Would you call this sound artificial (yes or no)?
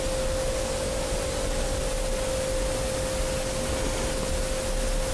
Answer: no